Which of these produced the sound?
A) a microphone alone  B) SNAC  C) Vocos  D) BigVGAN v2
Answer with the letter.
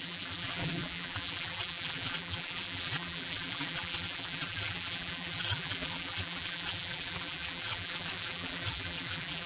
D